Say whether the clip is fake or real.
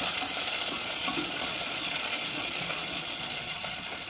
fake